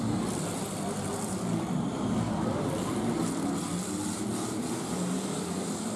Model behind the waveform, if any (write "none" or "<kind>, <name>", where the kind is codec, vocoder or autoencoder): vocoder, BigVGAN v2